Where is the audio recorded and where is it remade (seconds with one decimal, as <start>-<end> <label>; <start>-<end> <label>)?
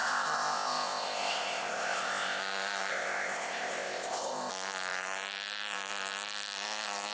0.0-2.4 remade; 2.4-2.9 recorded; 2.9-4.5 remade; 4.5-7.1 recorded